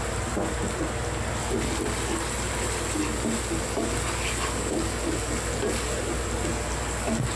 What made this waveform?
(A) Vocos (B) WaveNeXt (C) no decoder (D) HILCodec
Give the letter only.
C